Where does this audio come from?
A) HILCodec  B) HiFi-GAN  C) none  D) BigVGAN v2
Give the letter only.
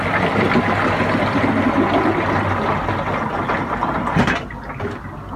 C